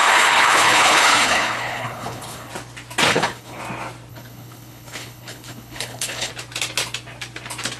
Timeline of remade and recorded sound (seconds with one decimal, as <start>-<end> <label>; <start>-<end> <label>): 0.0-2.5 remade; 2.5-3.1 recorded; 3.1-3.6 remade; 3.6-4.1 recorded; 4.1-6.3 remade; 6.3-7.8 recorded